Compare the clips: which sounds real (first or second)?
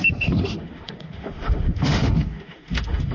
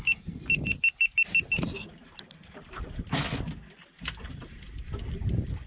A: second